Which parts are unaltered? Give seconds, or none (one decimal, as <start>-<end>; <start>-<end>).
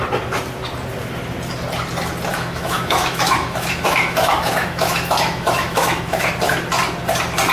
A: 0.0-2.3; 6.3-7.5